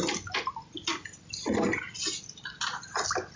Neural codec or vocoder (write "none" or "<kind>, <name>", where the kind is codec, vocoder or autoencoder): none